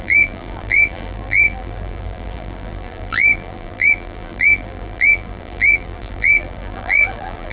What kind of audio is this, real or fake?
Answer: fake